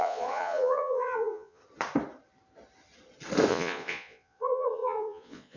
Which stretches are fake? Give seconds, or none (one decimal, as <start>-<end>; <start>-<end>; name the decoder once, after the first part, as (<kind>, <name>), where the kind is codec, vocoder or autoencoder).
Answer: 0.0-1.6 (vocoder, Vocos); 3.5-5.6